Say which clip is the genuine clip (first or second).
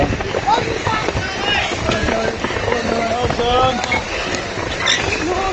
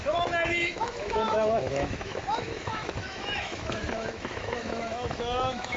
first